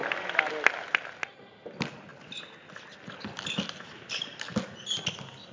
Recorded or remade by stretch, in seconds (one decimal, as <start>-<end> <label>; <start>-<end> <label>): 0.0-5.5 recorded